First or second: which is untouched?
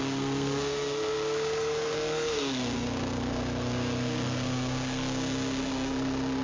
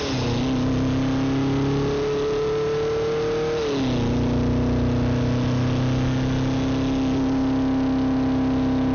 second